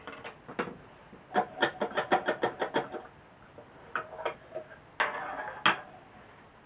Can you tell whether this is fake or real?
real